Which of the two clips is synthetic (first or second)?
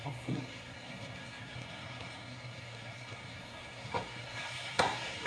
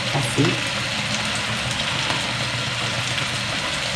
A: first